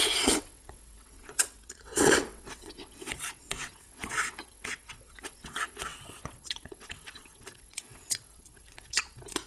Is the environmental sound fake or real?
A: fake